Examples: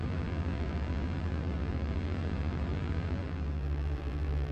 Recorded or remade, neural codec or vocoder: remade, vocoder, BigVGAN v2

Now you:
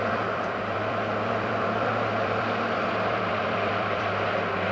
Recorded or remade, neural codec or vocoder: remade, vocoder, BigVGAN v2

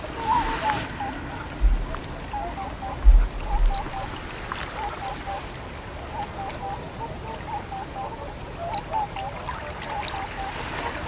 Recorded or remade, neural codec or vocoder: recorded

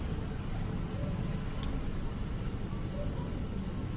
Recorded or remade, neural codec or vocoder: recorded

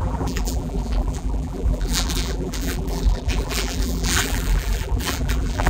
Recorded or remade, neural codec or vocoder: remade, vocoder, BigVGAN v2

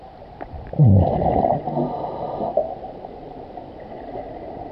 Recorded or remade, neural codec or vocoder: recorded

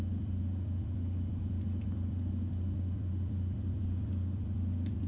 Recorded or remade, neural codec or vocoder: remade, vocoder, BigVGAN v2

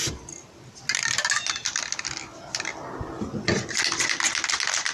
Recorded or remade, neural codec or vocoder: recorded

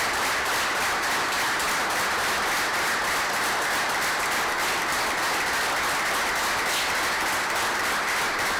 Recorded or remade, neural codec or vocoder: recorded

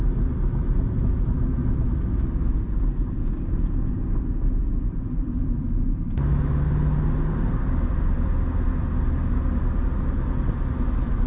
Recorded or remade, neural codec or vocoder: recorded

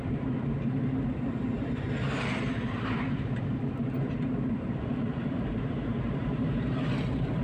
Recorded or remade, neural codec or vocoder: remade, vocoder, BigVGAN v2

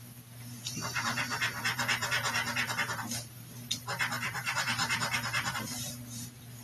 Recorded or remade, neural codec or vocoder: remade, vocoder, BigVGAN v2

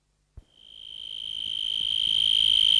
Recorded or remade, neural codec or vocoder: recorded